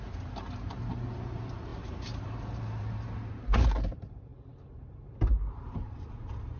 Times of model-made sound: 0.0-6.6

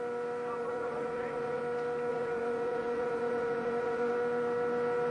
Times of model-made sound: 0.6-1.6; 2.1-4.1

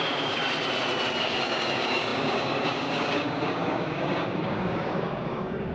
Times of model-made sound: 0.0-0.4; 1.2-5.7

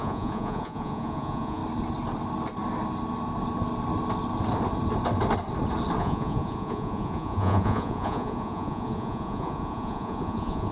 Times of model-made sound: 0.0-1.6; 6.0-10.7

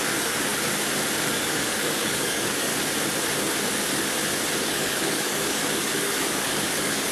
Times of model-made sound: 0.0-0.5; 1.3-2.7; 4.6-7.1